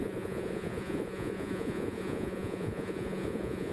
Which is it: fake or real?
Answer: fake